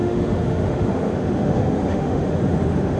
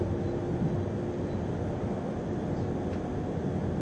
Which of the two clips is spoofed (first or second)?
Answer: first